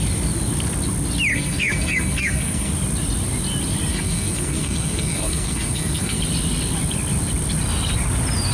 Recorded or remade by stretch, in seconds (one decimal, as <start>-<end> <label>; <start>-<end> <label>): 0.0-1.3 recorded; 1.3-2.7 remade; 2.7-3.9 recorded; 3.9-6.2 remade; 6.2-8.5 recorded